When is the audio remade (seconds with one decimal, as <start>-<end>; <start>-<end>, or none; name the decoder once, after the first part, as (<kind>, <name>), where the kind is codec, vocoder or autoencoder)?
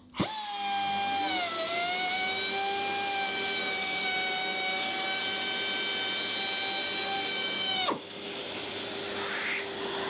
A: 3.6-5.2 (codec, DAC); 6.8-8.4